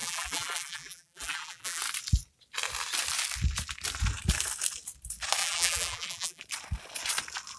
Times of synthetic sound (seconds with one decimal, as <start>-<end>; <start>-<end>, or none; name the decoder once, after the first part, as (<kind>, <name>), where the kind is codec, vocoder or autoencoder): 0.0-1.8 (vocoder, BigVGAN v2); 5.4-6.4